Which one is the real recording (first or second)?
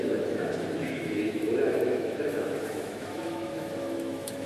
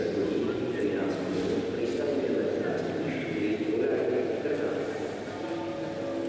second